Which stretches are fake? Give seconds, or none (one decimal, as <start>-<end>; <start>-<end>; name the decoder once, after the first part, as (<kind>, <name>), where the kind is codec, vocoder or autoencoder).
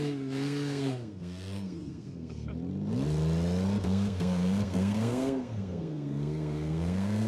0.0-2.5 (codec, SNAC); 3.8-7.3